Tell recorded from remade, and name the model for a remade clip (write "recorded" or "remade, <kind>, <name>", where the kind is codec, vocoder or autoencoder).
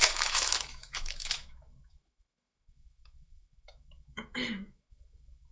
remade, autoencoder, DAC-VAE